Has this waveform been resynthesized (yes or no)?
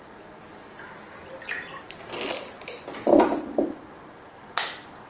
no